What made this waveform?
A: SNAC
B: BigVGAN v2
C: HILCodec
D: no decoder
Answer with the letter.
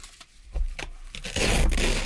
D